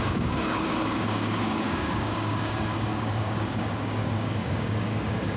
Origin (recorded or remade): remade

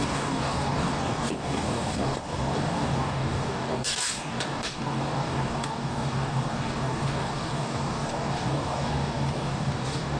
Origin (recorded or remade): remade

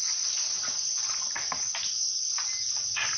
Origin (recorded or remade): recorded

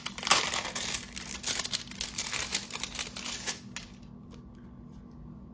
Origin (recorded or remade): recorded